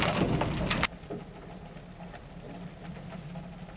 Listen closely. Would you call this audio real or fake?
real